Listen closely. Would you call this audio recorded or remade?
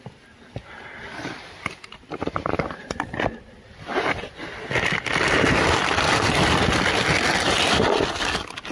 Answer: recorded